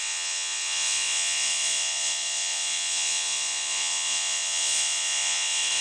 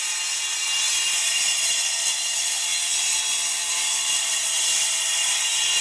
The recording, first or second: second